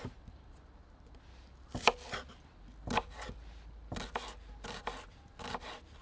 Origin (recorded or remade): recorded